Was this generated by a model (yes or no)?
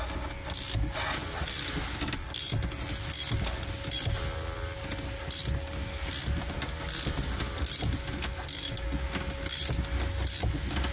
no